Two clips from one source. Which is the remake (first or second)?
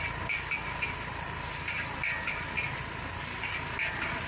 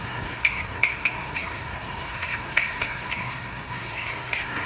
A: second